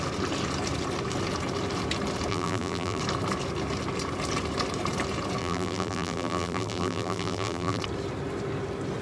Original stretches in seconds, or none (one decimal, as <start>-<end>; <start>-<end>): 0.0-2.3; 3.0-5.4; 7.8-9.0